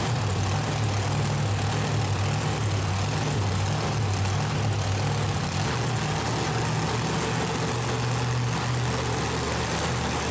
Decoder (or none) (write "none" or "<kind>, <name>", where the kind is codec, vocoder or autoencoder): none